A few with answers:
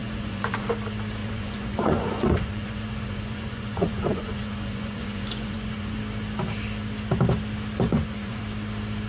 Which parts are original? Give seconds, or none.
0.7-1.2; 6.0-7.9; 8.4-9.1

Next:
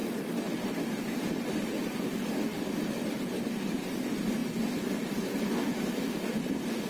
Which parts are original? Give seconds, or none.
0.0-6.9

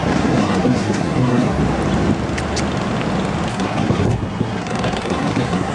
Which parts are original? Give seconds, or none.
1.6-3.5

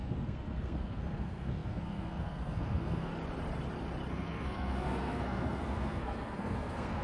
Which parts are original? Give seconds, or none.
3.1-4.1

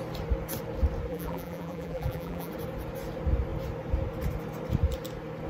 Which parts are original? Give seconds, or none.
0.0-1.1; 2.5-5.5